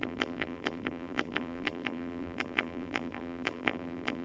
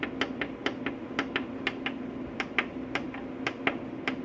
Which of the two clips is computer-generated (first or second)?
first